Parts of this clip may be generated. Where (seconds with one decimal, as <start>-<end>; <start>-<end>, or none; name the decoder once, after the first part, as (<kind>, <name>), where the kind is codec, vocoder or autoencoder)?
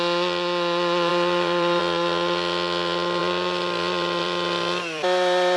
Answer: 1.1-1.8 (vocoder, BigVGAN v2); 3.2-5.6